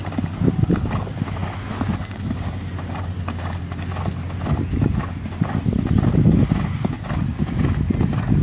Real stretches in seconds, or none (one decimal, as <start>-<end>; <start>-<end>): 0.0-8.4